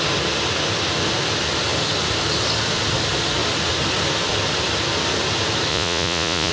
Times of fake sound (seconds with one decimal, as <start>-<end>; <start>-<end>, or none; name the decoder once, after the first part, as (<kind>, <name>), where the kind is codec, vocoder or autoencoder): 5.7-6.5 (vocoder, Vocos)